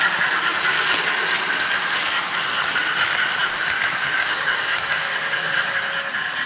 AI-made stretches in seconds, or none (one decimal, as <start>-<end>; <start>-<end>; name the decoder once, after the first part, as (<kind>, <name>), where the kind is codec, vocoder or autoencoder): 4.2-5.8 (codec, DAC)